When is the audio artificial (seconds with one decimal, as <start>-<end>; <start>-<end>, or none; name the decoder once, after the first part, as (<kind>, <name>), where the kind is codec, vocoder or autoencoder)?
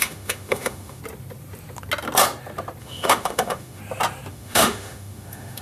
0.0-1.0 (autoencoder, DAC-VAE); 2.8-3.8; 4.3-5.6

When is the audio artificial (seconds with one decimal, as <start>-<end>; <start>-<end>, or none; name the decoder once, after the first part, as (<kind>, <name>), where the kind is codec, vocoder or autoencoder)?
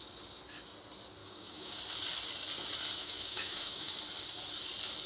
1.2-1.8 (autoencoder, DAC-VAE); 3.0-3.9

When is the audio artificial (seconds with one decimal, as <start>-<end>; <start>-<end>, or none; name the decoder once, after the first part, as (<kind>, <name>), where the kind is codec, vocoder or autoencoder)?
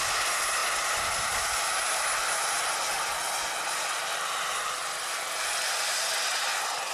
none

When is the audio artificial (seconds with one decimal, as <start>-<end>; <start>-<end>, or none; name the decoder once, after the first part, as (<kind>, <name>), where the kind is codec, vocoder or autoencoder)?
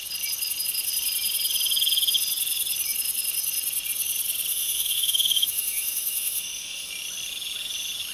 4.5-6.9 (autoencoder, DAC-VAE)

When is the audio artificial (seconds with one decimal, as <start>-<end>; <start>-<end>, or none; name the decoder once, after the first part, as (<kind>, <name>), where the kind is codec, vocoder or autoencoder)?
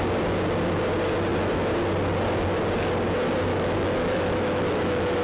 3.5-5.2 (autoencoder, DAC-VAE)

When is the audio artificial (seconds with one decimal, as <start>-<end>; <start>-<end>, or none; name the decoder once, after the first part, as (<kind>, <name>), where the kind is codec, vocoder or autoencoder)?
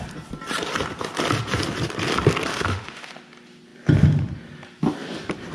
2.5-3.1 (autoencoder, DAC-VAE)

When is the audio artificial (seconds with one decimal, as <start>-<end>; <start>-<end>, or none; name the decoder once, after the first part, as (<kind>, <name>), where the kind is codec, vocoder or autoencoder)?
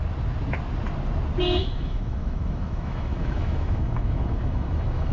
1.6-5.1 (autoencoder, DAC-VAE)